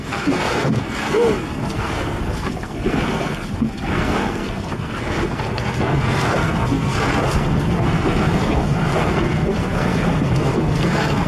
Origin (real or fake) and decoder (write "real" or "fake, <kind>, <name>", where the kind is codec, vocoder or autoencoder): fake, codec, SNAC